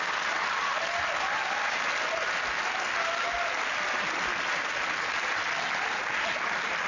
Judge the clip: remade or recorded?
recorded